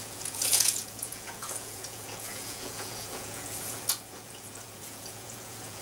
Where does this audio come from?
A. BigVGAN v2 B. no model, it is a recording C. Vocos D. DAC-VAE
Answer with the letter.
C